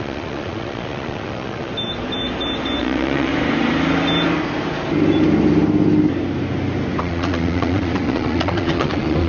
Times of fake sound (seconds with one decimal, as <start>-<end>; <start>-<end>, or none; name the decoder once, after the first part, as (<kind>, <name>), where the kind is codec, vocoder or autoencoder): 0.0-1.7 (vocoder, Vocos); 2.8-3.3; 7.0-9.3